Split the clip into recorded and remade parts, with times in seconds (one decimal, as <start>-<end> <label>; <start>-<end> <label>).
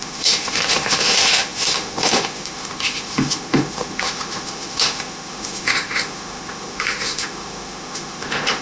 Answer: 0.0-8.6 remade